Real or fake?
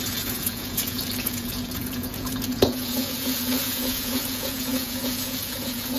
fake